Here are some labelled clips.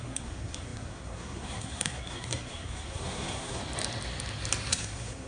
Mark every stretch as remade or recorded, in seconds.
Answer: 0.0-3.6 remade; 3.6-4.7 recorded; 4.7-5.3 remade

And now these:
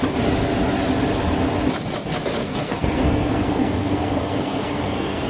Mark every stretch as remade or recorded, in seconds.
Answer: 0.0-2.4 recorded; 2.4-5.3 remade

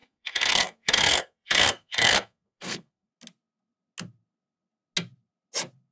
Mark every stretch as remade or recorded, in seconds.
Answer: 0.0-3.1 remade; 3.1-5.9 recorded

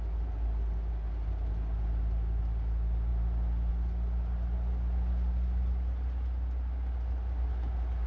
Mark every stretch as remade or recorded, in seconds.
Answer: 0.0-8.1 recorded

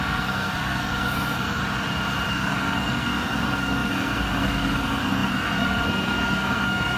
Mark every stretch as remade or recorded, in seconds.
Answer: 0.0-1.6 remade; 1.6-2.3 recorded; 2.3-7.0 remade